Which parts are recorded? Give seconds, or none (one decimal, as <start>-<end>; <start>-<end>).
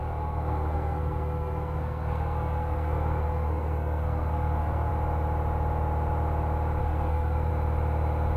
4.9-6.8; 7.5-8.4